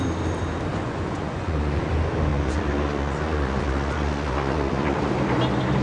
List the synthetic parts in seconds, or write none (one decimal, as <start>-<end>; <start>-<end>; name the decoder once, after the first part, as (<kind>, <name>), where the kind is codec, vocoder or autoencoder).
0.7-1.9 (vocoder, Vocos); 2.3-5.1